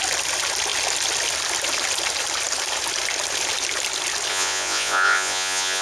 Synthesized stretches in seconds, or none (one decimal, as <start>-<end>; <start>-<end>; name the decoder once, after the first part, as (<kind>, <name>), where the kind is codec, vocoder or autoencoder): 4.3-5.8 (vocoder, Vocos)